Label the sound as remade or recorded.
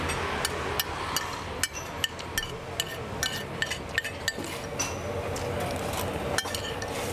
recorded